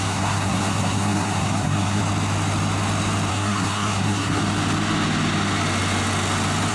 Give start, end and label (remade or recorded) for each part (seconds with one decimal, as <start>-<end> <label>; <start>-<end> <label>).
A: 0.0-2.0 remade; 2.0-3.3 recorded; 3.3-4.4 remade; 4.4-6.7 recorded